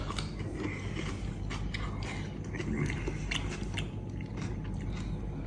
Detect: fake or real real